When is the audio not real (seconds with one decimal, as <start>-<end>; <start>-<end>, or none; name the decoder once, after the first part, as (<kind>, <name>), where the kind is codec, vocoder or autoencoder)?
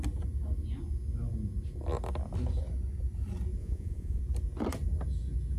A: 3.6-4.2 (vocoder, Vocos)